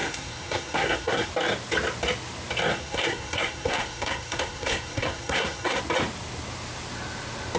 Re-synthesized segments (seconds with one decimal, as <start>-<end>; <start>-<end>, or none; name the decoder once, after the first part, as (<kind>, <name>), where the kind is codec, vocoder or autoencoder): 0.0-1.3 (codec, SNAC); 2.7-5.8